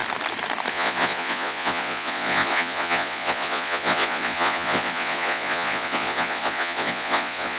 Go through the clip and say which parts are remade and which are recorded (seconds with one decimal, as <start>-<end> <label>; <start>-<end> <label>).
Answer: 0.0-0.7 recorded; 0.7-7.6 remade